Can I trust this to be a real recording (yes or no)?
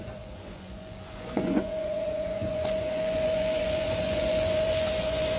no